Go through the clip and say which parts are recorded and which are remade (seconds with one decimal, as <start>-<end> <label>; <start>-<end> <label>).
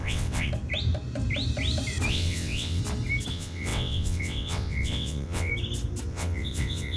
0.0-0.5 remade; 0.5-2.1 recorded; 2.1-2.8 remade; 2.8-3.3 recorded; 3.3-5.5 remade; 5.5-6.1 recorded; 6.1-7.0 remade